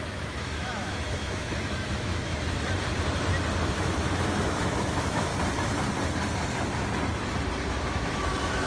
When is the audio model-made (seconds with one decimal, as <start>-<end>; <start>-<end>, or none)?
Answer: 0.0-2.3; 3.8-5.3; 7.7-8.7